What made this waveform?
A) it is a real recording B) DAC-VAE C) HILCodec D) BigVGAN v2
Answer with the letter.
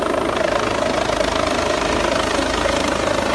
A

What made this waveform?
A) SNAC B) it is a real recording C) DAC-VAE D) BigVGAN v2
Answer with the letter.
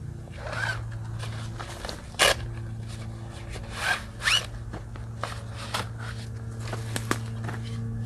B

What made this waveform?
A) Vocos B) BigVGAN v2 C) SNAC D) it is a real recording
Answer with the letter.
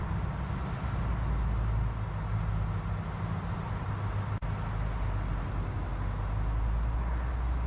D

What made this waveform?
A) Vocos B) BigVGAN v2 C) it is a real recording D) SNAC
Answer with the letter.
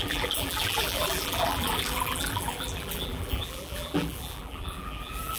B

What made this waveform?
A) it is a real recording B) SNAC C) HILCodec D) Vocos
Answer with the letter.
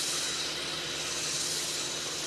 A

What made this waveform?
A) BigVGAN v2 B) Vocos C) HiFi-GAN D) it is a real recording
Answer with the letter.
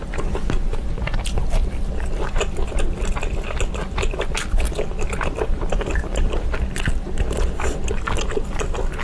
D